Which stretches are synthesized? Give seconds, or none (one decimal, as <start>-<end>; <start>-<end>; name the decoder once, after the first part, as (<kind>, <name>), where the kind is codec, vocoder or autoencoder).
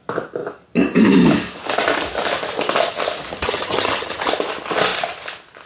3.3-4.3 (vocoder, HiFi-GAN)